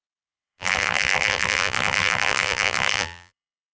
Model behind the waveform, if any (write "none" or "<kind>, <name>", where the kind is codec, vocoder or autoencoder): vocoder, BigVGAN v2